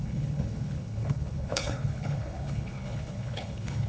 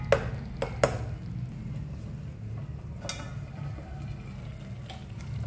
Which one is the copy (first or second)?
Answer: first